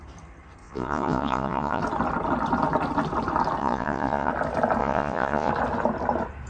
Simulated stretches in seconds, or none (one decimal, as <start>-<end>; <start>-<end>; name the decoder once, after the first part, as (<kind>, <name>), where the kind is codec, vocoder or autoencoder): 0.6-1.8 (vocoder, Vocos); 3.6-4.3; 4.8-5.5